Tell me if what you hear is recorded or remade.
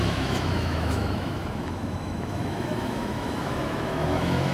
remade